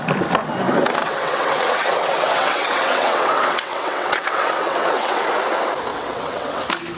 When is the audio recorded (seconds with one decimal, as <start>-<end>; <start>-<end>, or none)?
0.0-1.0; 5.2-5.9; 6.6-7.0